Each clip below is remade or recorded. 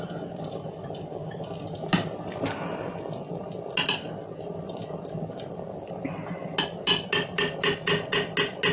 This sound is recorded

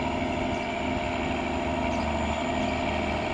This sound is recorded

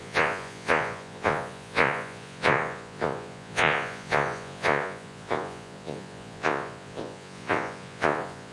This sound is remade